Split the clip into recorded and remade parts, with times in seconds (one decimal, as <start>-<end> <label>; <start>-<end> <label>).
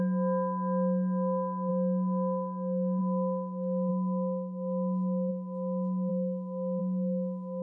0.0-3.9 recorded; 3.9-5.3 remade; 5.3-6.1 recorded; 6.1-6.8 remade; 6.8-7.6 recorded